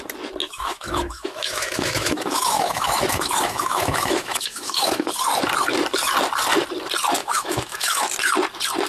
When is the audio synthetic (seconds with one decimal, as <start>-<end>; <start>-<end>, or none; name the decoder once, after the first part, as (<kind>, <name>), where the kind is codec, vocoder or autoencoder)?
0.4-5.1 (autoencoder, DAC-VAE); 7.2-8.1